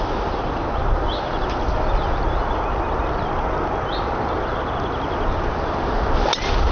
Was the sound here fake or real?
real